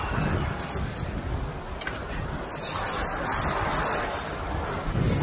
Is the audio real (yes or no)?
yes